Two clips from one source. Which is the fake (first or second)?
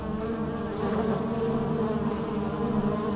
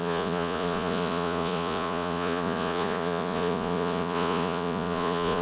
second